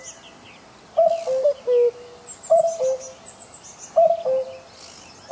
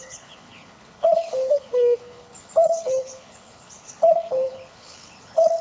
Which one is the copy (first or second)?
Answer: second